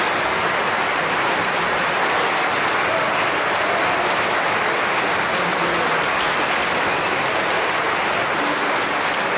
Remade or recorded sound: recorded